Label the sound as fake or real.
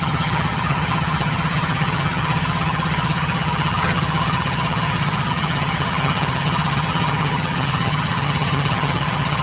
fake